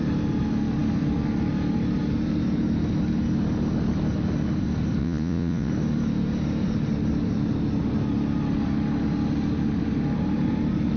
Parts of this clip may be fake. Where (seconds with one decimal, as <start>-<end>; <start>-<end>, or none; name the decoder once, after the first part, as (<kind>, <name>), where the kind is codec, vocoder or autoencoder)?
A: 5.0-5.7 (vocoder, Vocos)